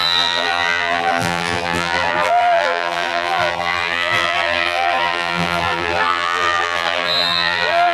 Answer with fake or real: fake